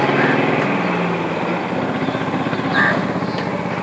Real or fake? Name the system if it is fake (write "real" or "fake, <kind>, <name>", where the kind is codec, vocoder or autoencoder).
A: real